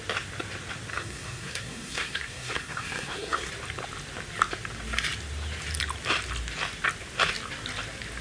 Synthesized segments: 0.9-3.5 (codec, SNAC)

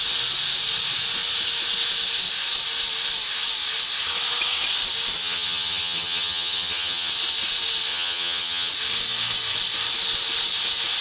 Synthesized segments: 5.2-7.1 (vocoder, HiFi-GAN); 7.9-8.7